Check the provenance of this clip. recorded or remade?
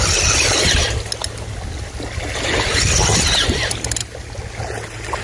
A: recorded